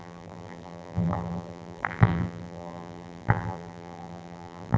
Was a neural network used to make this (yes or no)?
yes